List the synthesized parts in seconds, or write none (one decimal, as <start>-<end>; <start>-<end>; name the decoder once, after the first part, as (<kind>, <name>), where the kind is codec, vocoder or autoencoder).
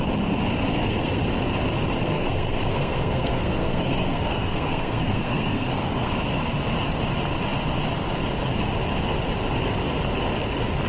0.7-1.3 (codec, SNAC); 2.0-6.1